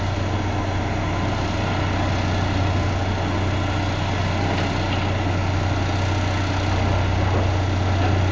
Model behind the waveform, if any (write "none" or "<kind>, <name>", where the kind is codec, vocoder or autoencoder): none